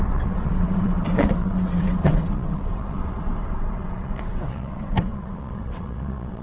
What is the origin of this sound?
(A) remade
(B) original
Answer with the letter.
A